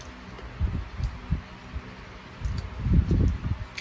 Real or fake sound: real